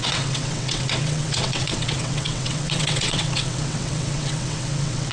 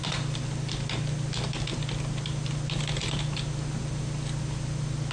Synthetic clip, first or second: first